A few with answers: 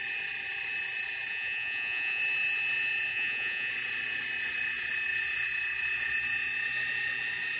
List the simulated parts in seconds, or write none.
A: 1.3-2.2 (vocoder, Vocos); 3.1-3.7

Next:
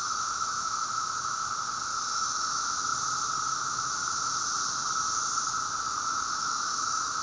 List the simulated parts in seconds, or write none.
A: 0.0-1.5 (autoencoder, DAC-VAE); 2.1-2.9; 3.6-4.3; 5.7-7.2

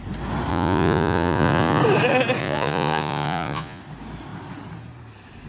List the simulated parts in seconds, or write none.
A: 0.5-1.8 (vocoder, Vocos); 2.4-3.8